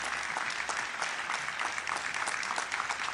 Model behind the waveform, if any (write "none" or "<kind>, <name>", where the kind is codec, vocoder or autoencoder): vocoder, BigVGAN v2